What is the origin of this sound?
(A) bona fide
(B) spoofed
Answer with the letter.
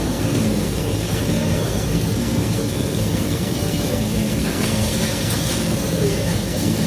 B